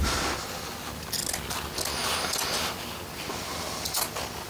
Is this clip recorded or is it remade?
recorded